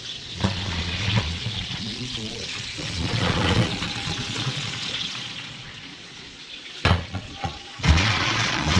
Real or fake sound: fake